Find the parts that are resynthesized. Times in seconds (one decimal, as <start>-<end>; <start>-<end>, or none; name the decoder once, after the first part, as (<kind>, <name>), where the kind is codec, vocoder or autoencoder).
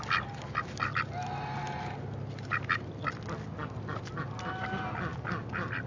none